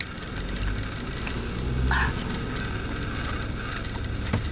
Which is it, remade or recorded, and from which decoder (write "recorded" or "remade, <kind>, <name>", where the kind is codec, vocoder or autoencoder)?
recorded